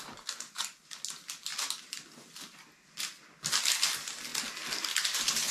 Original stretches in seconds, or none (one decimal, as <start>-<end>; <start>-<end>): 0.0-5.5